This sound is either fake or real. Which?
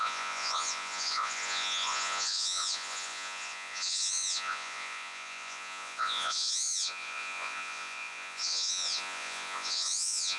fake